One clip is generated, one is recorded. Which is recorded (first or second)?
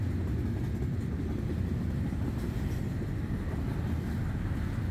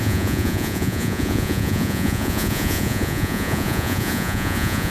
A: first